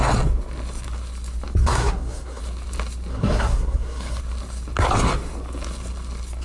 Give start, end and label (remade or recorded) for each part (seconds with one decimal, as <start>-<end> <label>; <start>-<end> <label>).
0.0-1.6 recorded; 1.6-2.4 remade; 2.4-3.1 recorded; 3.1-4.2 remade; 4.2-6.4 recorded